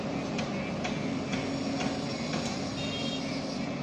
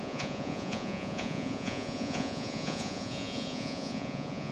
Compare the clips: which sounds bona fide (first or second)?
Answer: first